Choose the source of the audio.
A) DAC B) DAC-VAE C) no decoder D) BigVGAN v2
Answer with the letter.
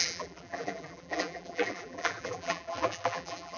D